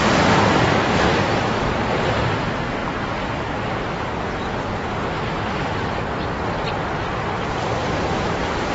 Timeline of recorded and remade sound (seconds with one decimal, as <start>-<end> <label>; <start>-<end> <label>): 0.0-1.1 recorded; 1.1-2.2 remade; 2.2-8.7 recorded